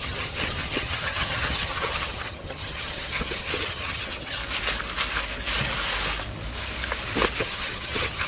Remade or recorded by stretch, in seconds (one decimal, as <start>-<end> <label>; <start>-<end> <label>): 0.0-4.4 remade; 4.4-7.4 recorded; 7.4-8.3 remade